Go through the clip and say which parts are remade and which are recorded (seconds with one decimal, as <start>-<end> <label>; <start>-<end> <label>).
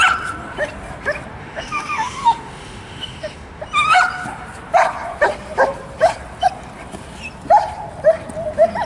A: 0.0-1.4 recorded; 1.4-3.6 remade; 3.6-8.9 recorded